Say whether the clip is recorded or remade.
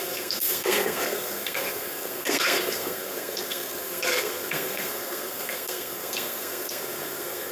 remade